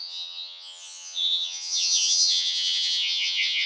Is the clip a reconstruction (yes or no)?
yes